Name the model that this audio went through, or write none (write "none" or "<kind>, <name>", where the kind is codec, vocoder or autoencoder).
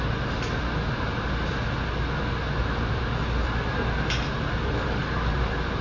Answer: none